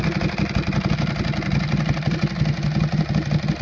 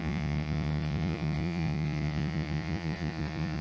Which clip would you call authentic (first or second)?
first